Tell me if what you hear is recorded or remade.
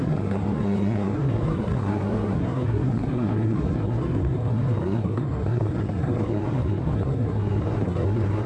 remade